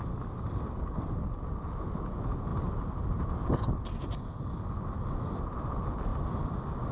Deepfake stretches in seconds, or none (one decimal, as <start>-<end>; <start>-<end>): none